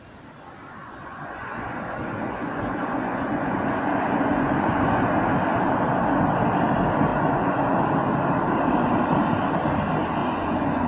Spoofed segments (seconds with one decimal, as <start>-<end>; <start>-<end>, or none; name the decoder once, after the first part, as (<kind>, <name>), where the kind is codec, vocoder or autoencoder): 0.8-5.0 (vocoder, Vocos); 7.1-7.8; 10.2-10.9

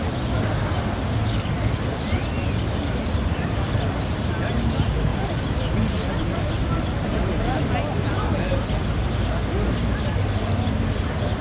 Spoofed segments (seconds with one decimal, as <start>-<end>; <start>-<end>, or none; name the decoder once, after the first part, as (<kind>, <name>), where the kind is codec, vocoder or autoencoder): none

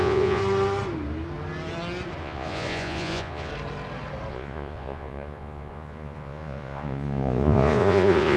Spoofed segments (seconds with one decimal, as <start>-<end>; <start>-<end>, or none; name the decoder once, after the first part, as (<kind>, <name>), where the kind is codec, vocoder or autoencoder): 0.0-0.4 (vocoder, Vocos); 2.2-3.5; 4.3-8.4

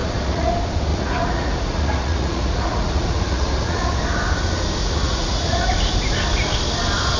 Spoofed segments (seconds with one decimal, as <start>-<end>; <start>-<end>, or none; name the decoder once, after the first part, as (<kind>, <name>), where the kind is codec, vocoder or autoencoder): 0.0-0.5 (vocoder, Vocos); 0.9-3.9; 4.8-5.7

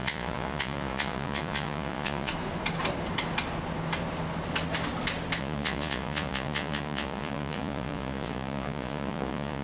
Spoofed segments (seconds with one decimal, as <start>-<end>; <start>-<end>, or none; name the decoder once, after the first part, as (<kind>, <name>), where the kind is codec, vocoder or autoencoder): 0.0-2.3 (vocoder, Vocos); 5.4-9.6

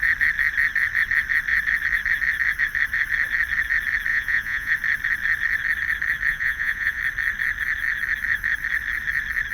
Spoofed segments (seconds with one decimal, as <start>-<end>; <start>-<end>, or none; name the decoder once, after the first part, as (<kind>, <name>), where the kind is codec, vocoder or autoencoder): 4.1-4.7 (vocoder, Vocos); 6.3-7.0

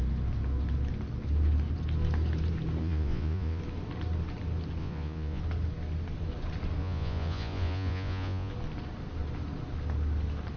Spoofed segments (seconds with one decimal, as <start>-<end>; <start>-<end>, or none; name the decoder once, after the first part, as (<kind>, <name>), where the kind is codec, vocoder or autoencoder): 2.8-3.6 (vocoder, Vocos); 4.8-5.4; 6.8-8.5

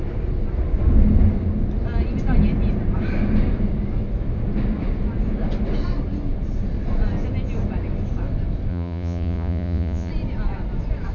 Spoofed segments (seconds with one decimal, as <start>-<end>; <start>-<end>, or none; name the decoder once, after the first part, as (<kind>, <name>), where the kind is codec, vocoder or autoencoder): 8.7-10.1 (vocoder, Vocos)